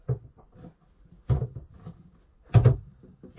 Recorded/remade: recorded